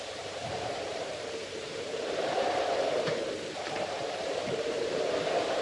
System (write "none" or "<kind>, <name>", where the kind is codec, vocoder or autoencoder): vocoder, BigVGAN v2